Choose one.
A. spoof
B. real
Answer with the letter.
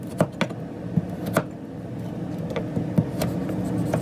B